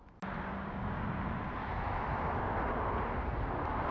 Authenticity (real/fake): real